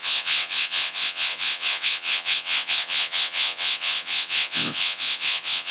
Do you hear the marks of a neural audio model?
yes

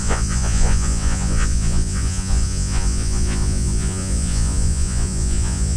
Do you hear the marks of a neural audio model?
yes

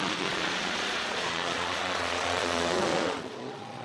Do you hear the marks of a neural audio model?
yes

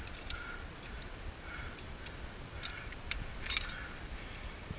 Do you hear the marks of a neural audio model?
no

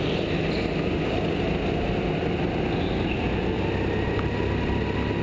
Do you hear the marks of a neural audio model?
no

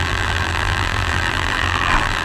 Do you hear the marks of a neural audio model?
yes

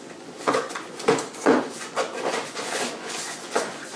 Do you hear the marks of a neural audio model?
yes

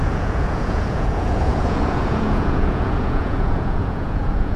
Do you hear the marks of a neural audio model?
yes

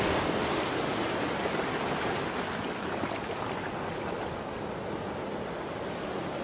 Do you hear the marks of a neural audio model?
no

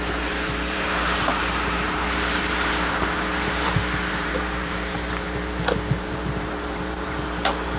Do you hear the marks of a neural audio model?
yes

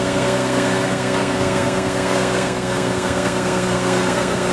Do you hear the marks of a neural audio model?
yes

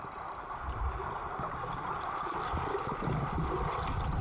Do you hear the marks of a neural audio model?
no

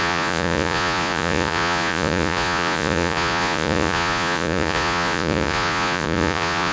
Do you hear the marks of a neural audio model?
yes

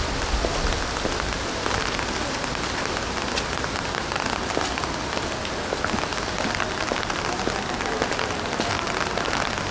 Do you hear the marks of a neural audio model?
no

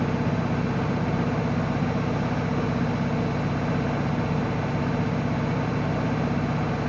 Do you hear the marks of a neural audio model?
no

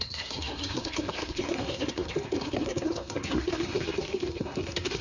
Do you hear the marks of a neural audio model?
yes